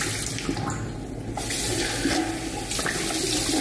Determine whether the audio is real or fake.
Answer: real